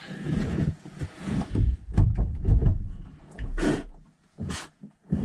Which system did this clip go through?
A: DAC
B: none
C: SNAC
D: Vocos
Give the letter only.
D